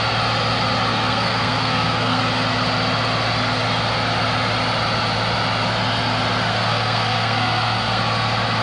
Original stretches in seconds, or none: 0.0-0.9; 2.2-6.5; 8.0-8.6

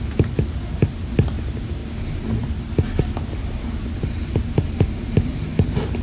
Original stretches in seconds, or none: 0.0-6.0

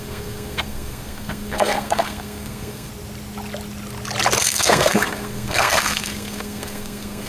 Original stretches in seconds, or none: 2.9-4.4

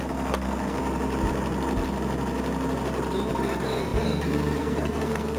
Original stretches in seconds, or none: 0.8-3.3

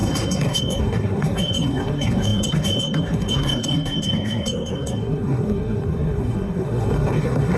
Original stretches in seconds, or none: none

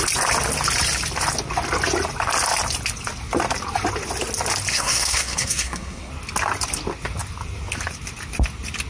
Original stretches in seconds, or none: 0.0-4.7; 6.1-8.9